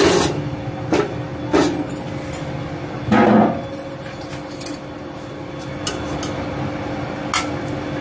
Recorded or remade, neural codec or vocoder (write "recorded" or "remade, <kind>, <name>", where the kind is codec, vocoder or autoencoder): recorded